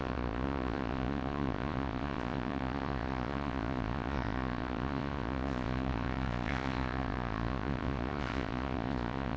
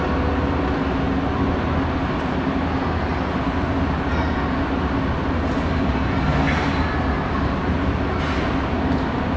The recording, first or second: second